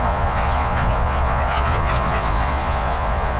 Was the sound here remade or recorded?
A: remade